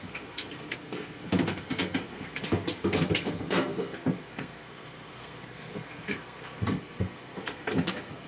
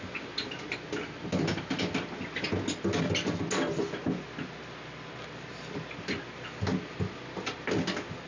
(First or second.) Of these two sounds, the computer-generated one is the first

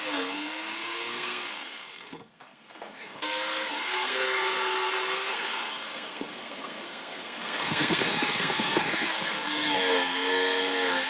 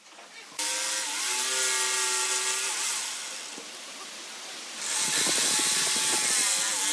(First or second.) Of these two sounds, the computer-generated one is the first